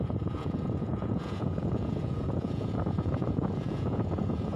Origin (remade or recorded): remade